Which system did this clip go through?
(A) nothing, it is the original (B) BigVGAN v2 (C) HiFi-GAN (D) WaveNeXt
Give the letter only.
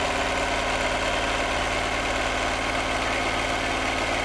A